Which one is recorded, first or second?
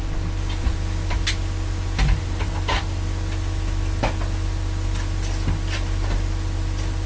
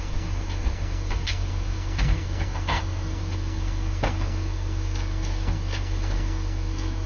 first